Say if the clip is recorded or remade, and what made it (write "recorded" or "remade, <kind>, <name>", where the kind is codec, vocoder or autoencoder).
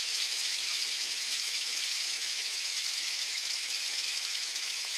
remade, autoencoder, DAC-VAE